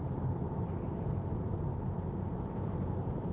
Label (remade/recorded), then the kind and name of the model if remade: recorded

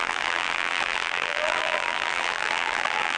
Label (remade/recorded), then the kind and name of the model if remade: remade, vocoder, BigVGAN v2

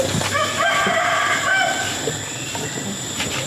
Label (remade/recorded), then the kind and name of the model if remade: recorded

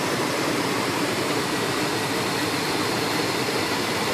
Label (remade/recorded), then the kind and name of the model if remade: remade, vocoder, BigVGAN v2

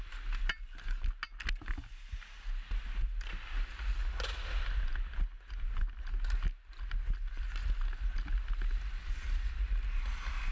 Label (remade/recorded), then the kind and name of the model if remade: recorded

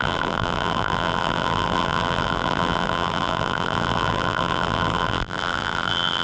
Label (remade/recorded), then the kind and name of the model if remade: remade, vocoder, BigVGAN v2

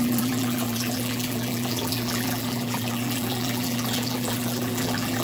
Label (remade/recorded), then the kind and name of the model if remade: remade, vocoder, BigVGAN v2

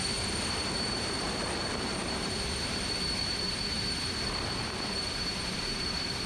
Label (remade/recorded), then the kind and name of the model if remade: remade, vocoder, BigVGAN v2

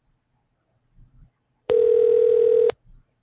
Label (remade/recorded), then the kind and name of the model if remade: remade, vocoder, BigVGAN v2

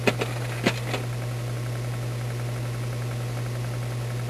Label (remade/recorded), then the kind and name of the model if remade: recorded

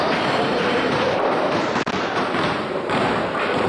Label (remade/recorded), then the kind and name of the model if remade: remade, vocoder, BigVGAN v2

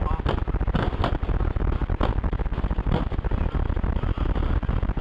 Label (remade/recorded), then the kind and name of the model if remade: recorded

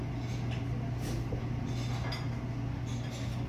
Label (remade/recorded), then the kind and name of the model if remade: recorded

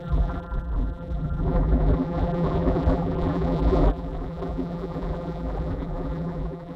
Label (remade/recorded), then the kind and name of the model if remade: remade, vocoder, BigVGAN v2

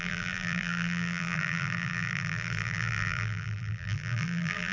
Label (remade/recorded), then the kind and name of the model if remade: remade, vocoder, BigVGAN v2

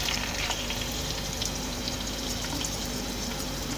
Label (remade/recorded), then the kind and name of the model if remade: remade, vocoder, BigVGAN v2